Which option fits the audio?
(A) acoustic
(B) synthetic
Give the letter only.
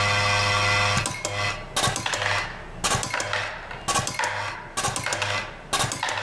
A